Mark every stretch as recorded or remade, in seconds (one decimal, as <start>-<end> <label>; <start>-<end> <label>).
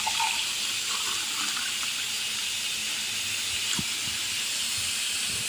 0.0-5.5 recorded